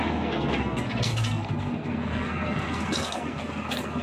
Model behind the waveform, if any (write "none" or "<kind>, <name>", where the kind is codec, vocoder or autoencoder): codec, SNAC